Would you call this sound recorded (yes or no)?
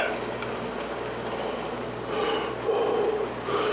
yes